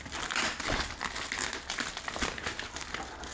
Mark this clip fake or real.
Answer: real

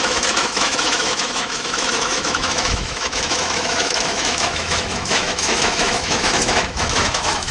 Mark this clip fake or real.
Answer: fake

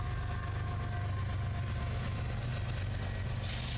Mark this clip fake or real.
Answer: real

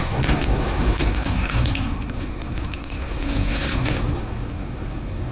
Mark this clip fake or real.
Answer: fake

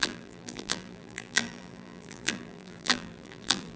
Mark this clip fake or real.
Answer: fake